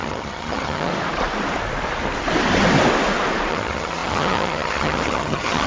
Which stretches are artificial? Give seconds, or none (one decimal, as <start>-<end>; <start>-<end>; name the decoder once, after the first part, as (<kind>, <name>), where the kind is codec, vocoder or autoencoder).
0.0-0.9 (vocoder, HiFi-GAN); 3.5-5.7